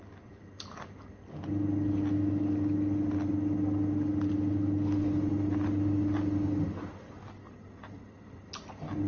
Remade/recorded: recorded